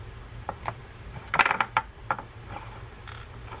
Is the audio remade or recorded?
remade